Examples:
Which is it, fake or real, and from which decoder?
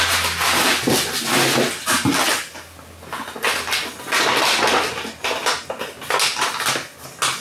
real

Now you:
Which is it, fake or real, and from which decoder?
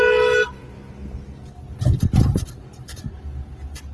real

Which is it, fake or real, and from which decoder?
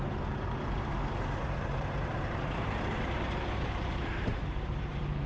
fake, vocoder, BigVGAN v2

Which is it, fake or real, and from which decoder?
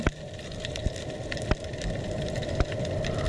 fake, vocoder, BigVGAN v2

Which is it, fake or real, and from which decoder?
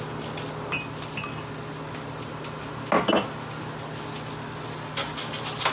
real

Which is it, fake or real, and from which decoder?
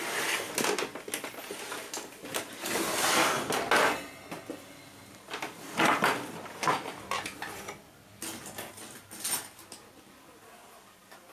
real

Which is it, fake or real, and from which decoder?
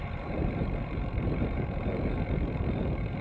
fake, vocoder, BigVGAN v2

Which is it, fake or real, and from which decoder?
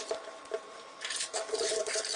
fake, vocoder, BigVGAN v2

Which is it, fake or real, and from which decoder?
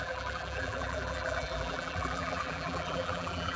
fake, vocoder, BigVGAN v2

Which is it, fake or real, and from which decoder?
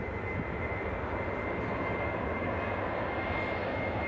real